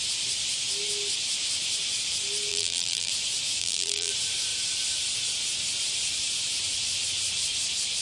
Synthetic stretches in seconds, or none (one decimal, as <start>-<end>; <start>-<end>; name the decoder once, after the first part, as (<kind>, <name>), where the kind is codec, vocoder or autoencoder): 2.5-3.1 (vocoder, BigVGAN v2); 3.6-4.1